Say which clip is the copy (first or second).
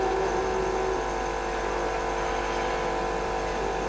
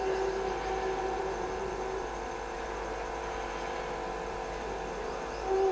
second